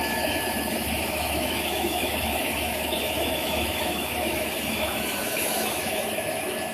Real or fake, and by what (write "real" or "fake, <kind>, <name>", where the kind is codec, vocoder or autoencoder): fake, autoencoder, DAC-VAE